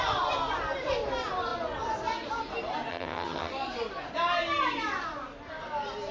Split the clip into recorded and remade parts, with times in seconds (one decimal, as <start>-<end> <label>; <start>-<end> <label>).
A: 0.0-2.9 recorded; 2.9-3.5 remade; 3.5-6.1 recorded